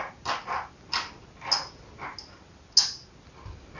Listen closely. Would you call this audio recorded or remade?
recorded